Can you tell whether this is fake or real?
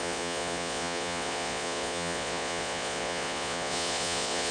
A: fake